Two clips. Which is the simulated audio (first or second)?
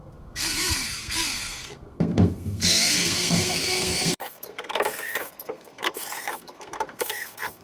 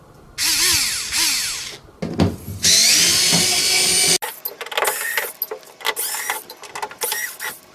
first